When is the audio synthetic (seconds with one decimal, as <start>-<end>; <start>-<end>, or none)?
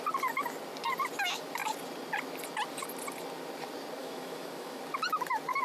4.0-4.8